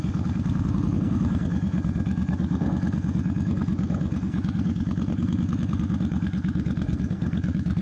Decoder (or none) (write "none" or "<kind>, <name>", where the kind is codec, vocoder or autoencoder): codec, SNAC